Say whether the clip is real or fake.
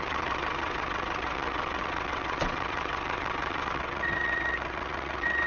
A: fake